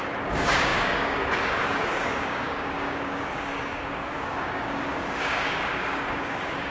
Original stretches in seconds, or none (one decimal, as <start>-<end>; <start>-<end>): none